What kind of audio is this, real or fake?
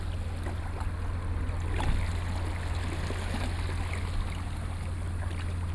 real